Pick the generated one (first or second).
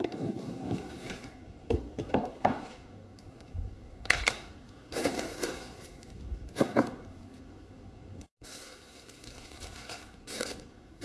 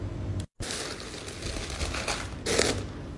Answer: first